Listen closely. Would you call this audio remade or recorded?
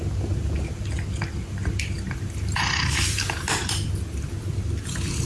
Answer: recorded